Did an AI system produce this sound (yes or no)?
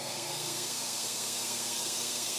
yes